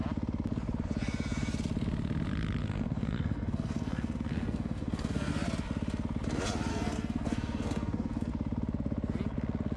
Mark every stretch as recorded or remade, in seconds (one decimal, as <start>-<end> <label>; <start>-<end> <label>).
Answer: 0.0-2.6 recorded; 2.6-5.3 remade; 5.3-6.7 recorded; 6.7-8.3 remade; 8.3-9.8 recorded